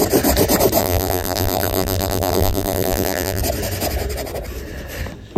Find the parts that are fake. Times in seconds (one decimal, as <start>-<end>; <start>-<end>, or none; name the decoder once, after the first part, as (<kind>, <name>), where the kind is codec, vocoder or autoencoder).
0.8-3.4 (vocoder, BigVGAN v2)